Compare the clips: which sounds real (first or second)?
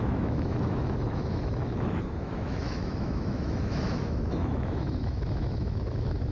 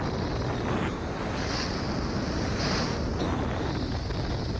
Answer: second